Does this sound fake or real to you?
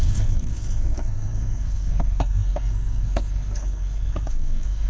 fake